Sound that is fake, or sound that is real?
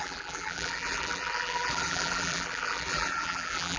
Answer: fake